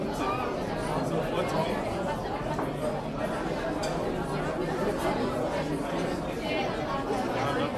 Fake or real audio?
real